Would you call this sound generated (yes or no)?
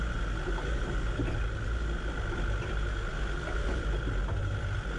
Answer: no